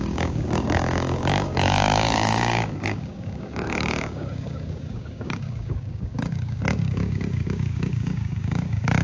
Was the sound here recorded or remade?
remade